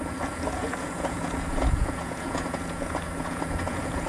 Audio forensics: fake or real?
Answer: fake